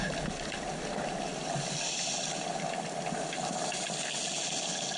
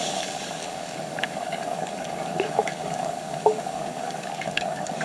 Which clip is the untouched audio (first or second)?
first